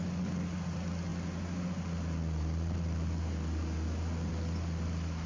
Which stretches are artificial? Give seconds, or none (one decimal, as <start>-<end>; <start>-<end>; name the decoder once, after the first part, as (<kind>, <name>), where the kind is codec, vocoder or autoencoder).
none